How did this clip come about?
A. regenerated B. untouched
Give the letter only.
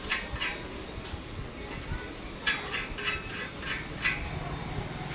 B